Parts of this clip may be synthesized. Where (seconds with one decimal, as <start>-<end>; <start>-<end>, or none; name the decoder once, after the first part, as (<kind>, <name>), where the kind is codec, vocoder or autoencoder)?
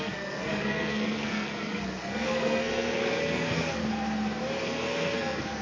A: 0.0-3.8 (codec, SNAC); 4.6-5.6